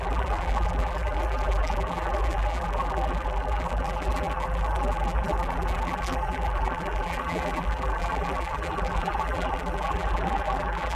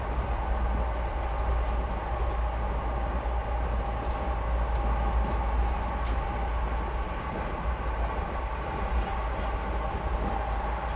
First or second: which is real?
second